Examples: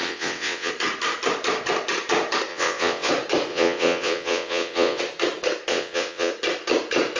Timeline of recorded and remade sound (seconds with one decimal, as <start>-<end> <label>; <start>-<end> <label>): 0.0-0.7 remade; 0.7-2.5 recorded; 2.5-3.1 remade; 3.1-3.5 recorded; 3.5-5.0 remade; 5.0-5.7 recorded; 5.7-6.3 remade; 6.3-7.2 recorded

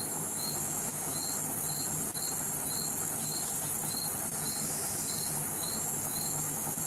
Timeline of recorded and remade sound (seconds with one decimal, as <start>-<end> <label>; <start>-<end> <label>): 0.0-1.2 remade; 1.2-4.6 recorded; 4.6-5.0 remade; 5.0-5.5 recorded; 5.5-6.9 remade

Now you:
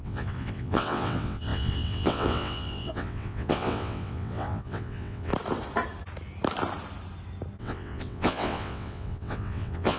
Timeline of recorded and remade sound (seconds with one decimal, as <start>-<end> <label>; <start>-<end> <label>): 0.0-5.3 remade; 5.3-7.6 recorded; 7.6-10.0 remade

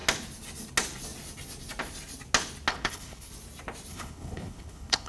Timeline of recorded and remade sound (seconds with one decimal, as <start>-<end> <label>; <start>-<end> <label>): 0.0-2.7 recorded; 2.7-3.3 remade; 3.3-3.9 recorded; 3.9-5.1 remade

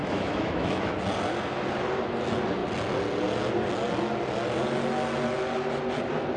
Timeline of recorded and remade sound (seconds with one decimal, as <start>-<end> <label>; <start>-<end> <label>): 0.0-0.9 remade; 0.9-6.4 recorded

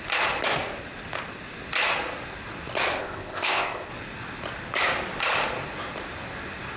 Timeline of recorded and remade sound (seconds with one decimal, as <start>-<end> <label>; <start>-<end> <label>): 0.0-3.0 recorded; 3.0-3.9 remade; 3.9-6.8 recorded